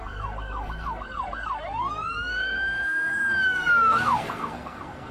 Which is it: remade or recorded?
remade